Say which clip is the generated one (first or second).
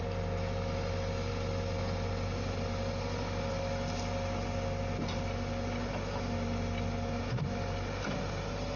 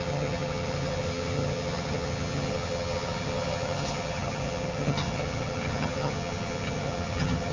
second